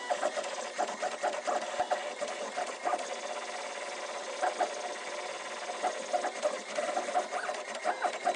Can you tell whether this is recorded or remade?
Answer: recorded